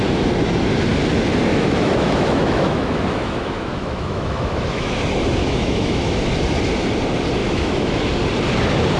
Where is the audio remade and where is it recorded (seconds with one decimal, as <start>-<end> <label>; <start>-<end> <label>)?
0.0-1.5 recorded; 1.5-5.0 remade; 5.0-5.4 recorded; 5.4-6.3 remade; 6.3-7.4 recorded; 7.4-8.0 remade; 8.0-9.0 recorded